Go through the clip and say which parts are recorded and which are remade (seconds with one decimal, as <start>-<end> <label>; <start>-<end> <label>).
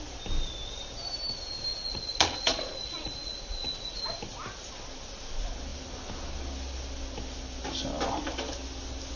0.0-1.7 recorded; 1.7-4.0 remade; 4.0-9.2 recorded